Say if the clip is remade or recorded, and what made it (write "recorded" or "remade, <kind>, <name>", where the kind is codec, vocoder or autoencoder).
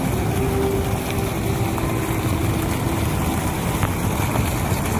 recorded